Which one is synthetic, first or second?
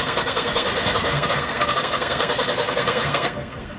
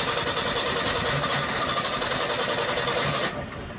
first